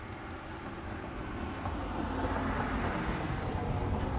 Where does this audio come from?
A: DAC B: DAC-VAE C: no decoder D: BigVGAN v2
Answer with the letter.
C